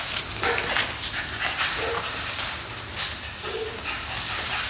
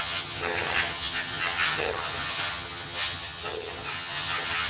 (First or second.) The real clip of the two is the first